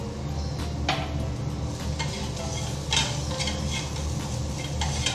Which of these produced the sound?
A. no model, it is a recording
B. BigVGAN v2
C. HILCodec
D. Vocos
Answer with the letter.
A